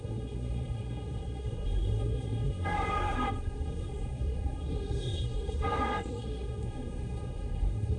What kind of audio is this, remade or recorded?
remade